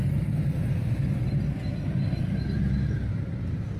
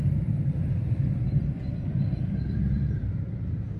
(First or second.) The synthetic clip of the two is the second